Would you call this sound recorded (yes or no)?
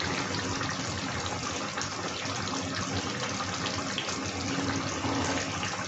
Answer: yes